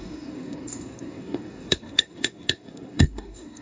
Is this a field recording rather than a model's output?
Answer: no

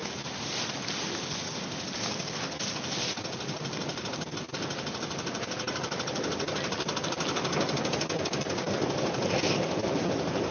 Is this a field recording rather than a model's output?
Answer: yes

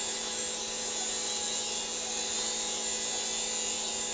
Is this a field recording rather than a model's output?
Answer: yes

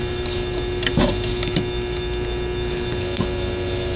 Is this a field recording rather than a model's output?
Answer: yes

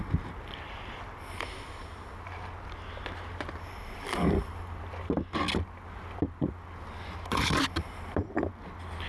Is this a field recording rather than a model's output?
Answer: yes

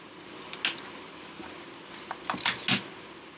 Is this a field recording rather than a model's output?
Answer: yes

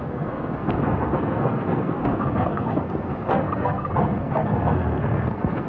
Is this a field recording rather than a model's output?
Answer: no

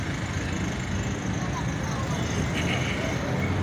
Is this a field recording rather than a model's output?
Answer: yes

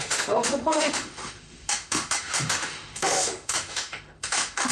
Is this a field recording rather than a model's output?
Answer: no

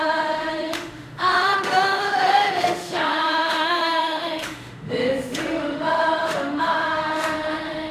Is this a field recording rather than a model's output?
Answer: no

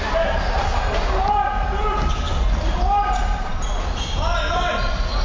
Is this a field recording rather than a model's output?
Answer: yes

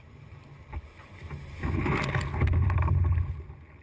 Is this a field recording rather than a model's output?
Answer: yes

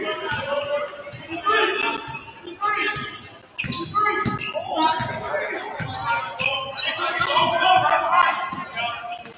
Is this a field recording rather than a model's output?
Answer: yes